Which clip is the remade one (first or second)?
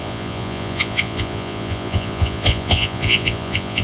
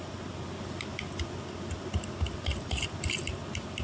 first